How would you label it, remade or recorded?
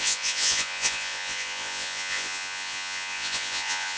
remade